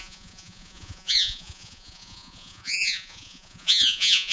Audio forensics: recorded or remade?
remade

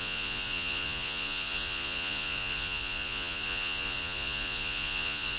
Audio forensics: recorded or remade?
remade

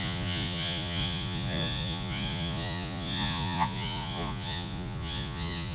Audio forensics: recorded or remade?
remade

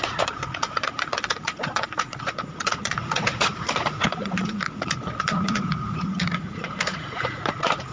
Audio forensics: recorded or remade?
remade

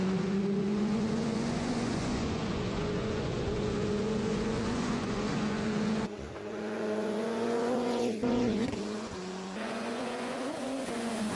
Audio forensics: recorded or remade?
remade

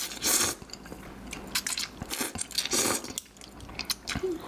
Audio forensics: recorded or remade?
recorded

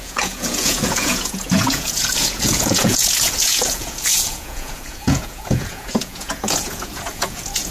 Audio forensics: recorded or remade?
remade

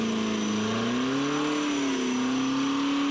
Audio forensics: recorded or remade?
recorded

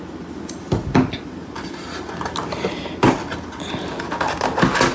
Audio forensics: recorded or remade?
recorded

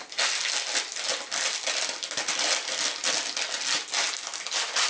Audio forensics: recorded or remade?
recorded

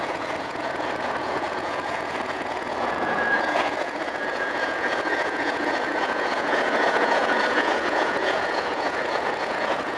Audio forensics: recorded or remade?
remade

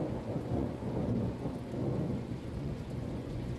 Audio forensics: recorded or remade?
remade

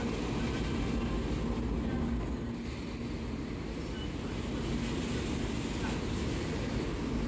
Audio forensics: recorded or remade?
recorded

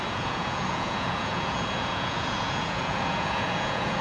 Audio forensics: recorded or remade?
remade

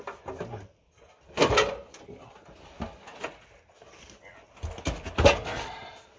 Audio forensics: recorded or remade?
recorded